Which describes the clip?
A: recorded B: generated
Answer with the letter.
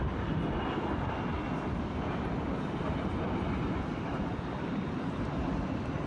A